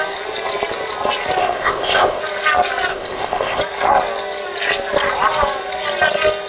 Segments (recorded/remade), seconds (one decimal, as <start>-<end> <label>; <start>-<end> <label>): 0.0-1.4 recorded; 1.4-2.2 remade; 2.2-2.9 recorded; 2.9-3.6 remade; 3.6-6.5 recorded